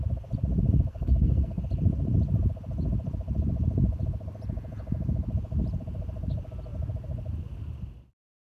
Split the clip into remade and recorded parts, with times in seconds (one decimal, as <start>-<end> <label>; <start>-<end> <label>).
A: 0.0-0.9 recorded; 0.9-1.6 remade; 1.6-8.5 recorded